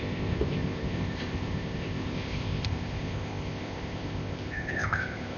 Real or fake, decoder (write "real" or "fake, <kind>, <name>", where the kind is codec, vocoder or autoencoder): fake, codec, ZipCodec